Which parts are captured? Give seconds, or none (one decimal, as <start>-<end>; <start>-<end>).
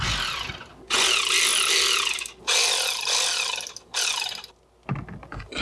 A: 0.0-5.6